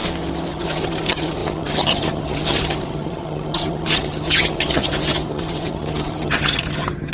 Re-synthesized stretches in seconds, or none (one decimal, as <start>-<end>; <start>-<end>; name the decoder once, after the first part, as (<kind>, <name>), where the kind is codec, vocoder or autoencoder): 0.5-7.1 (vocoder, HiFi-GAN)